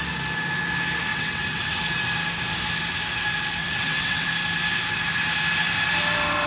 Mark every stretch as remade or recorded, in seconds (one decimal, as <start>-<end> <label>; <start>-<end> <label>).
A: 0.0-1.1 recorded; 1.1-1.8 remade; 1.8-3.6 recorded; 3.6-4.3 remade; 4.3-6.5 recorded